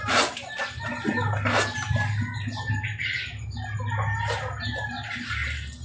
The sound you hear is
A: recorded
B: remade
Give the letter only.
A